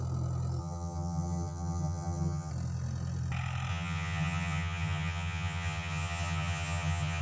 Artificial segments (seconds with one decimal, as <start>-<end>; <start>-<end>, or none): 0.6-2.5; 3.7-7.2